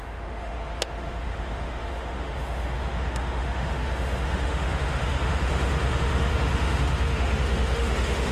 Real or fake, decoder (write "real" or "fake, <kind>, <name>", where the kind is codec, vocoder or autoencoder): fake, autoencoder, DAC-VAE